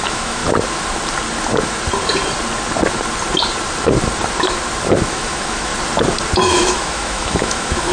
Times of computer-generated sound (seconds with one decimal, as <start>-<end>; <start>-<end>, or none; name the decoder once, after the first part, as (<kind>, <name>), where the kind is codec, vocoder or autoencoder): 0.0-0.4 (autoencoder, DAC-VAE); 5.1-5.7; 6.4-7.9